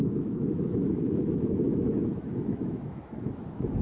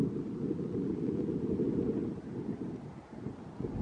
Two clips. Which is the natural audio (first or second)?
second